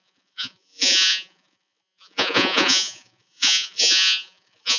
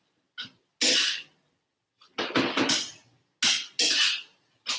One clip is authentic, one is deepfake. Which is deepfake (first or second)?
first